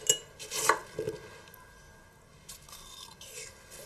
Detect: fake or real real